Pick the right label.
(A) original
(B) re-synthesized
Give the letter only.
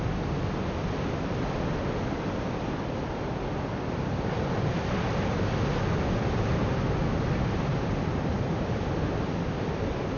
A